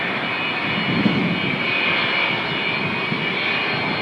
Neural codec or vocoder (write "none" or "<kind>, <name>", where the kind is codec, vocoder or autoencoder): none